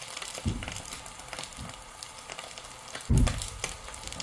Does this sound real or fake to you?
real